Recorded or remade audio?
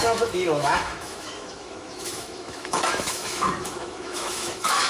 remade